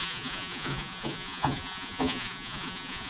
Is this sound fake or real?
fake